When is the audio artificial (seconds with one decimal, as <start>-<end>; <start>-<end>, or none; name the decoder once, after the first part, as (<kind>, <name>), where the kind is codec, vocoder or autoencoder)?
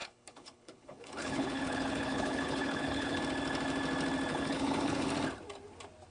0.0-3.2 (codec, HILCodec); 4.3-5.1